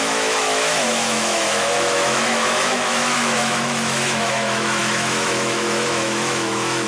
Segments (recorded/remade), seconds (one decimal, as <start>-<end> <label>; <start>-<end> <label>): 0.0-6.9 remade